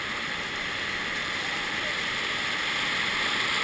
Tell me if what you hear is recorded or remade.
recorded